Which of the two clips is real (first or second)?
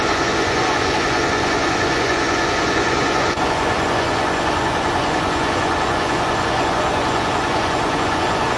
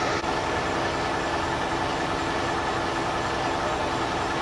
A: second